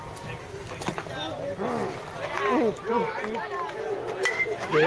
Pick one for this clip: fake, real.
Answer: real